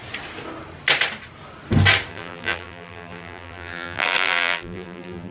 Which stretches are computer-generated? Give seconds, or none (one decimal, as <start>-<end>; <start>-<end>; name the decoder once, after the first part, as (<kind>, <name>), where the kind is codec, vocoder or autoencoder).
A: 2.1-5.3 (vocoder, BigVGAN v2)